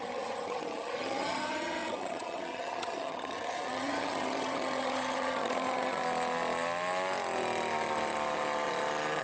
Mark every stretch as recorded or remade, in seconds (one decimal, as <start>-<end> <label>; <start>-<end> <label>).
0.0-6.0 remade; 6.0-9.2 recorded